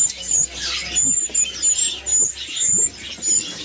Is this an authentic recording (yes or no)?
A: yes